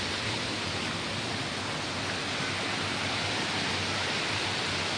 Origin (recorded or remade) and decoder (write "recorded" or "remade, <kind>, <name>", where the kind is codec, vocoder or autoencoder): recorded